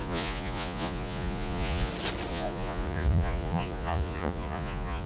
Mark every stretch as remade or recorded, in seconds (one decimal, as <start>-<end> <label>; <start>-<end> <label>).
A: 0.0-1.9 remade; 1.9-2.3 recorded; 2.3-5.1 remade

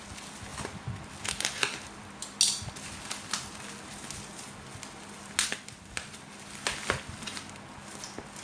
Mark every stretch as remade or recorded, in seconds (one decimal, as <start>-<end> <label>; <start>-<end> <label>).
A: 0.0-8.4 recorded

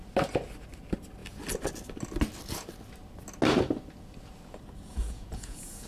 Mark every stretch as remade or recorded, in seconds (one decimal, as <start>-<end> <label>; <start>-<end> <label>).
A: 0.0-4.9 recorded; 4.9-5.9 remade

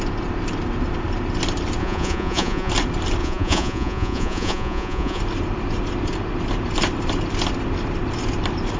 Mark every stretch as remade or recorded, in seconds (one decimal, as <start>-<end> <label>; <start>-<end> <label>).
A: 0.0-1.8 recorded; 1.8-2.7 remade; 2.7-3.2 recorded; 3.2-5.2 remade; 5.2-8.8 recorded